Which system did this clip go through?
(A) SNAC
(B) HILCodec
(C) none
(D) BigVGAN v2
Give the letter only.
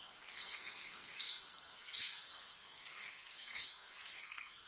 A